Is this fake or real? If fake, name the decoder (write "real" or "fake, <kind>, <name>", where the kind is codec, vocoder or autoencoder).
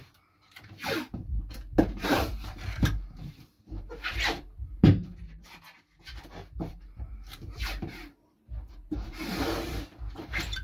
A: fake, vocoder, BigVGAN v2